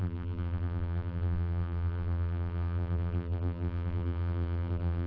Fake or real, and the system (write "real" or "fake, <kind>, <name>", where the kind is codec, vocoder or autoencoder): fake, vocoder, BigVGAN v2